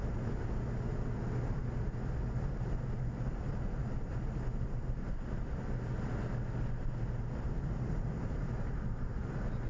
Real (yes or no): yes